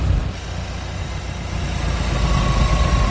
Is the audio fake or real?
real